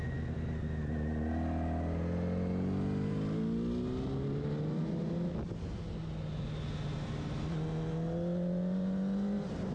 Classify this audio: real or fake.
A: real